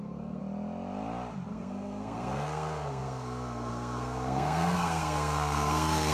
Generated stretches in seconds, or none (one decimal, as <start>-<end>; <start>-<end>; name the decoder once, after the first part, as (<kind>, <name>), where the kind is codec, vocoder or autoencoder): 0.0-0.4 (codec, SNAC); 1.5-6.1